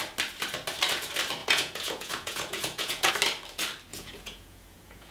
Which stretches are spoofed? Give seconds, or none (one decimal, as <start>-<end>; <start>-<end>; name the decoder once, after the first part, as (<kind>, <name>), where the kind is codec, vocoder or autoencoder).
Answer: 1.4-3.1 (vocoder, Vocos); 3.9-5.1